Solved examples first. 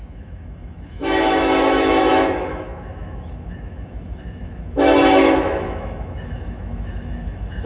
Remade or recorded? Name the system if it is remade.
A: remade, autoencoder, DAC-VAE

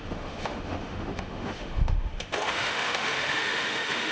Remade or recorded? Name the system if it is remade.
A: remade, autoencoder, DAC-VAE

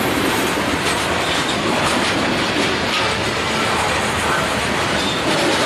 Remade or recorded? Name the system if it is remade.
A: recorded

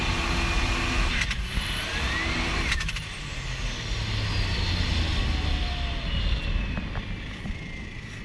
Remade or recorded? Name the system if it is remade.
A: recorded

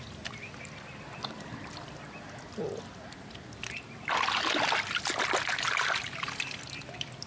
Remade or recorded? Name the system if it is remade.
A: recorded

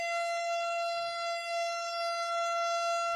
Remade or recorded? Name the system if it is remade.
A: remade, autoencoder, DAC-VAE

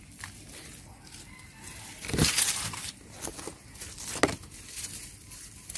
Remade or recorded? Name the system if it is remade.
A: recorded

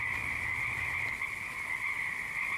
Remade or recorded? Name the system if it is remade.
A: recorded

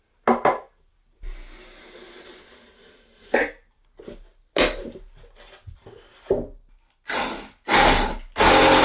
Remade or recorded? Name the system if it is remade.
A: recorded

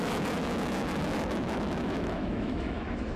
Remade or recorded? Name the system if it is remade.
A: remade, autoencoder, DAC-VAE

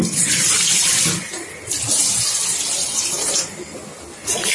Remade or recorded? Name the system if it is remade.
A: recorded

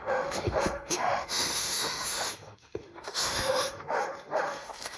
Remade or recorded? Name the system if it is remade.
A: remade, autoencoder, DAC-VAE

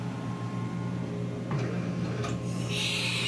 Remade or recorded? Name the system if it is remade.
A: recorded